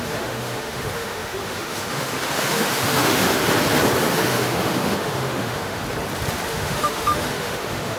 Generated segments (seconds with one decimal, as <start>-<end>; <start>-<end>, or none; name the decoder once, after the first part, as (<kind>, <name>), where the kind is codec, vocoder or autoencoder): 0.0-3.4 (autoencoder, DAC-VAE); 4.0-5.8; 6.5-8.0